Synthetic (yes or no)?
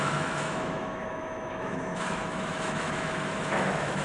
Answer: yes